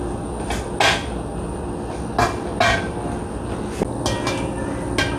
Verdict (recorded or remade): recorded